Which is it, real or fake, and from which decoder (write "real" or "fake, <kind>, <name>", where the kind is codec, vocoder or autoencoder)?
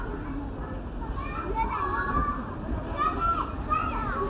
real